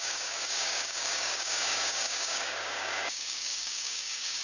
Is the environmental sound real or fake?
fake